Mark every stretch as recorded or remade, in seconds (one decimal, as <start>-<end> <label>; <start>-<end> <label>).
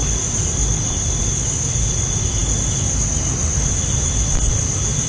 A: 0.0-5.1 recorded